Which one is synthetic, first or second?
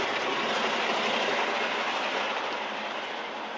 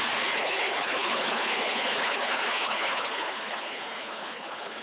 second